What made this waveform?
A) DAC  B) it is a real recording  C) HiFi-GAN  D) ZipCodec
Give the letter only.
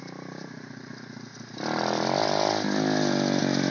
B